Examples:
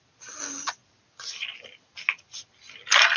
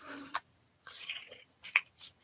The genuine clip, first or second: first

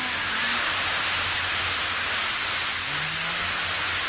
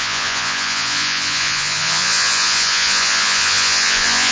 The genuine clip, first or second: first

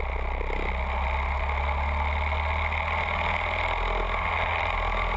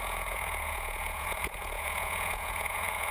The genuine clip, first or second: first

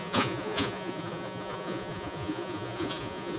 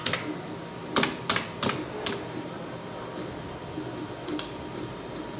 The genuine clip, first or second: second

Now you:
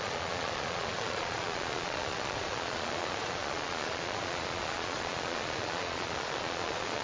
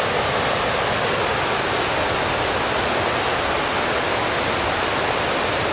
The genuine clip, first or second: second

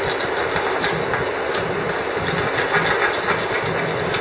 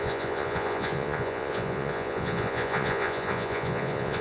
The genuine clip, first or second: first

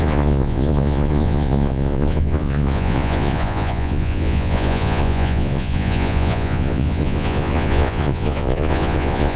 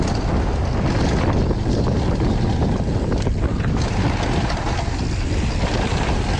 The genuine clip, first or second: second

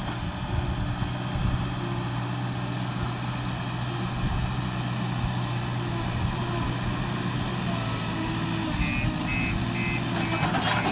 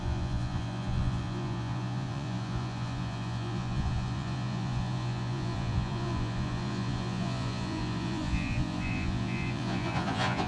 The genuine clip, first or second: first